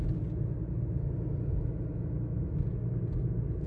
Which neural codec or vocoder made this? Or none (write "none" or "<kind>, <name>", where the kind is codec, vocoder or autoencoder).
none